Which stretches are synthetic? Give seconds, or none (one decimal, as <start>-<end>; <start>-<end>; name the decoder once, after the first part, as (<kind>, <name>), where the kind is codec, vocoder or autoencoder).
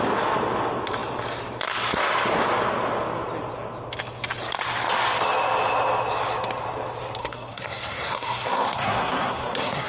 7.2-9.9 (codec, SNAC)